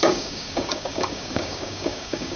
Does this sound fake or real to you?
fake